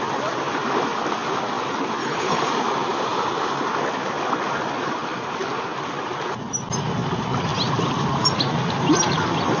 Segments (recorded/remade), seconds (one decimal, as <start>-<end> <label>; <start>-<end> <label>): 0.0-2.0 recorded; 2.0-2.5 remade; 2.5-9.6 recorded